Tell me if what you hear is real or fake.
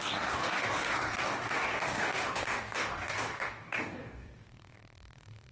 fake